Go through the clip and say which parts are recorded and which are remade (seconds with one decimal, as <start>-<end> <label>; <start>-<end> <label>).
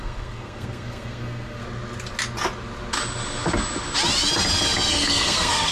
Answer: 0.0-1.6 remade; 1.6-4.9 recorded; 4.9-5.7 remade